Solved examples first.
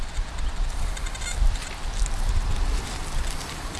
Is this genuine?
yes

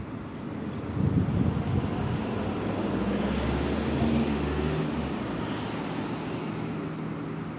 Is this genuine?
yes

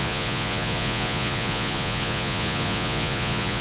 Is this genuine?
no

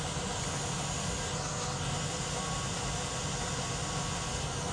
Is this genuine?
yes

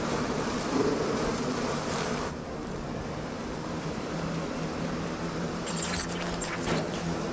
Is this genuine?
no